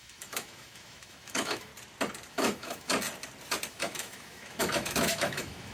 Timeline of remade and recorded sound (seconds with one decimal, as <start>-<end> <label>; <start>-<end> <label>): 0.0-1.7 remade; 1.7-2.3 recorded; 2.3-2.9 remade; 2.9-3.7 recorded; 3.7-5.7 remade